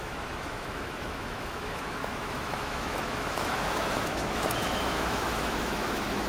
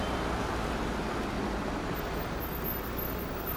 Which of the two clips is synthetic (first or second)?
first